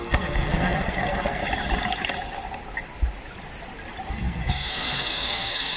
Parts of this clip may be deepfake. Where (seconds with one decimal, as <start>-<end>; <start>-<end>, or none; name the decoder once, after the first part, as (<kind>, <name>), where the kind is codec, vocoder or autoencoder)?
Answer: 0.0-1.4 (codec, SNAC); 4.1-5.8